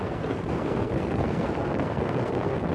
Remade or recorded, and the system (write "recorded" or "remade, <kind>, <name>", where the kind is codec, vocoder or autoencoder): remade, codec, SNAC